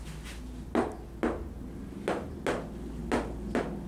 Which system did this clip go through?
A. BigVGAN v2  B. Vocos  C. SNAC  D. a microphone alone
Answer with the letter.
D